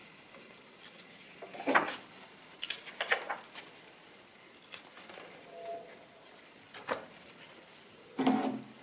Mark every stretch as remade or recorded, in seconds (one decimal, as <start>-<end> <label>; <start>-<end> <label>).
0.0-8.8 recorded

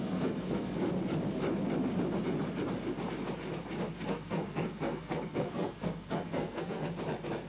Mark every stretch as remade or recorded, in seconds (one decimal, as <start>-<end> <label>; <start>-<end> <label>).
0.0-0.9 remade; 0.9-4.1 recorded; 4.1-6.8 remade; 6.8-7.5 recorded

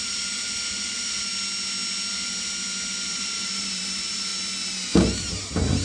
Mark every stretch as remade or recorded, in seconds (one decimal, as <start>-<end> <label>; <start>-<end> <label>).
0.0-1.3 remade; 1.3-3.1 recorded; 3.1-4.3 remade; 4.3-5.2 recorded; 5.2-5.8 remade